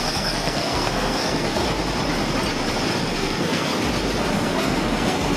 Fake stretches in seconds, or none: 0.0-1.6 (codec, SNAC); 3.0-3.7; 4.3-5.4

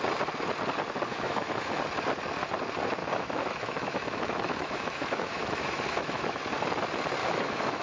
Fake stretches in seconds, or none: 1.1-1.7 (autoencoder, DAC-VAE); 3.0-6.4; 7.2-7.8

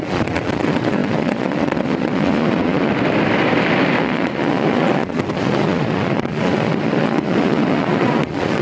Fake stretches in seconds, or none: 0.0-2.9 (vocoder, Vocos); 4.0-8.6

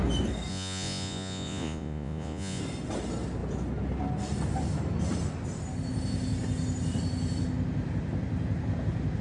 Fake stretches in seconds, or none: 0.5-2.6 (vocoder, Vocos)